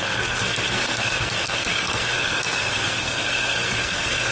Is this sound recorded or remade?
remade